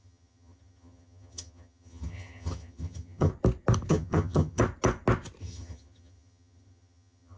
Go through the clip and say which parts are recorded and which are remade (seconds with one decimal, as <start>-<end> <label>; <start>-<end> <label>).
0.0-3.3 remade; 3.3-3.9 recorded; 3.9-4.6 remade; 4.6-5.4 recorded; 5.4-7.4 remade